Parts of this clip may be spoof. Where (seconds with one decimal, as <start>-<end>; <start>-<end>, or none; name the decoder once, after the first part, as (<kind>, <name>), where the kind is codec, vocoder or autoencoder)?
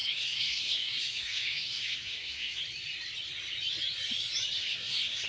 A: 0.0-2.6 (codec, SNAC); 4.6-5.3